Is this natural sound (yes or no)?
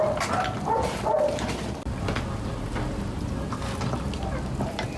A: yes